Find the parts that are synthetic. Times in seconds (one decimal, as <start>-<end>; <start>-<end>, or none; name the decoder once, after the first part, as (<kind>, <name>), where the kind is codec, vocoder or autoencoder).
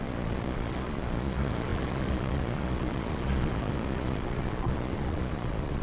0.0-5.8 (vocoder, Vocos)